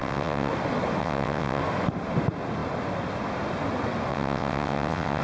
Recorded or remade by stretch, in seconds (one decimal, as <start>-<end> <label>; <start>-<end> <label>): 0.0-0.5 remade; 0.5-1.0 recorded; 1.0-1.6 remade; 1.6-4.1 recorded; 4.1-5.2 remade